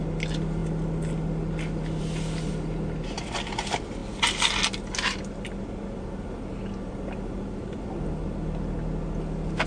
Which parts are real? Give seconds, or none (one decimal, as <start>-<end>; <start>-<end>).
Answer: 0.0-9.7